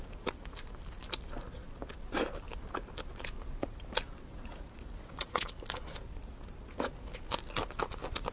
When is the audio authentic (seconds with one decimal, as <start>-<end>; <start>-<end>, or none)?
0.0-4.3; 5.5-8.3